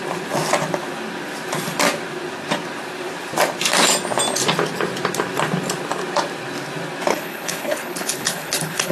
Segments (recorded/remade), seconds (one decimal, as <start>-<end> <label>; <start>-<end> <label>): 0.0-7.1 recorded; 7.1-8.9 remade